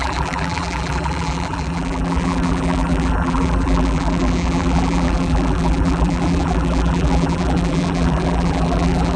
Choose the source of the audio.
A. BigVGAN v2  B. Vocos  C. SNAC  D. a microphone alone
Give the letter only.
A